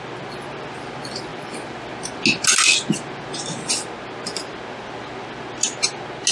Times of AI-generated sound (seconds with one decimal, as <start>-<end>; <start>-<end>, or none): none